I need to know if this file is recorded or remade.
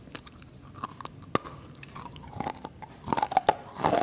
recorded